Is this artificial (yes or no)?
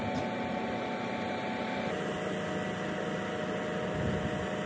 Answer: no